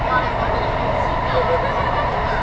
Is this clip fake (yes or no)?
no